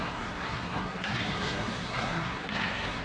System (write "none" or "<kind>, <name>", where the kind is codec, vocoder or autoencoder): codec, SNAC